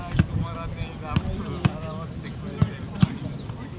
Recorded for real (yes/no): yes